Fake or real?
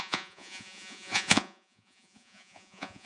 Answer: fake